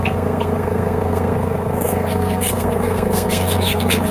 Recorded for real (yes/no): no